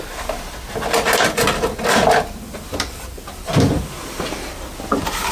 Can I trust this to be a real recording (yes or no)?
yes